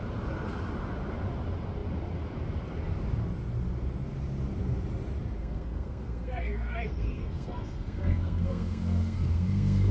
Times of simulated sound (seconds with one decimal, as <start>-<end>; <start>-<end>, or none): 5.4-9.9